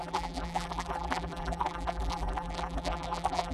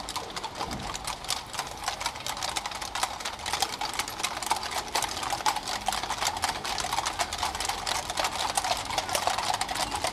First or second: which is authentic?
second